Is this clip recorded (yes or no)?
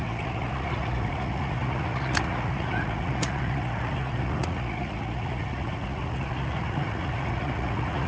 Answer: no